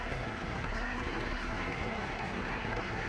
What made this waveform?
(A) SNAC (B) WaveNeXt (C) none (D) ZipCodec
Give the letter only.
A